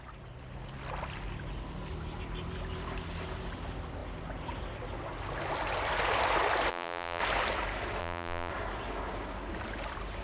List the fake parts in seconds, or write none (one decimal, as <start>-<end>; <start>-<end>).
6.7-7.2; 8.0-8.5